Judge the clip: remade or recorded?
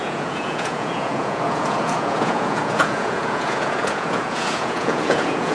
remade